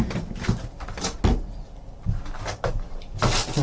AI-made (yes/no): no